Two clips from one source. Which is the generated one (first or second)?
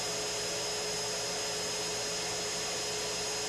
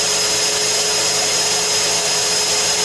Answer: second